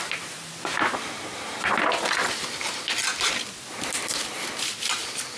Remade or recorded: recorded